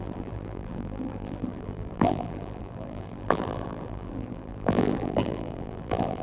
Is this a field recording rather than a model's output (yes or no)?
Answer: no